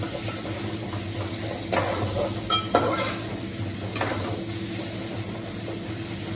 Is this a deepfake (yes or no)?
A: no